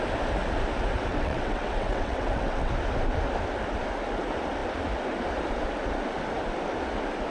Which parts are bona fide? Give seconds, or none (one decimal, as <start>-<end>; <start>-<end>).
0.0-1.1; 2.7-7.3